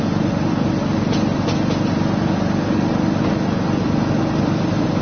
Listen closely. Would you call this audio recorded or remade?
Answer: recorded